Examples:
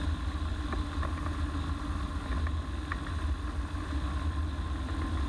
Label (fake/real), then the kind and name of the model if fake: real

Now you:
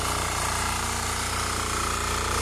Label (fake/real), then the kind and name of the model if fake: fake, vocoder, BigVGAN v2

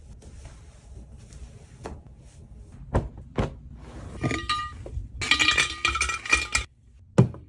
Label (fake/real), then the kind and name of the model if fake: real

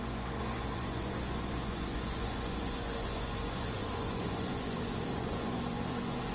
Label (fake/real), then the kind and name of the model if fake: fake, vocoder, Vocos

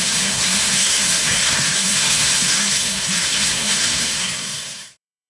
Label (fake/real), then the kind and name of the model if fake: fake, codec, SNAC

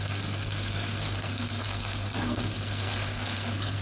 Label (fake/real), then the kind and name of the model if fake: fake, codec, SNAC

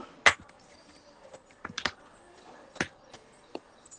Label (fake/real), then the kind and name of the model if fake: real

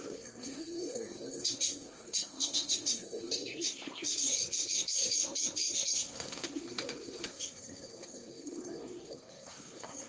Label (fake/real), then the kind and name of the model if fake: fake, codec, SNAC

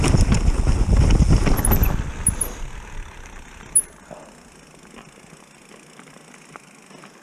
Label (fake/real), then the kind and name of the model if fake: real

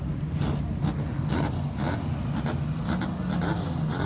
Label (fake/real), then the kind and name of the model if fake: real